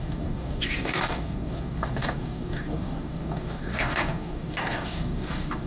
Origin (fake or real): fake